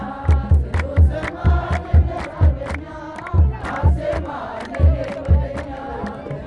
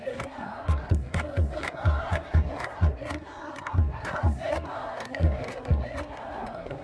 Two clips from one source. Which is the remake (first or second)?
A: second